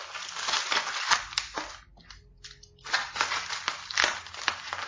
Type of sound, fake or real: real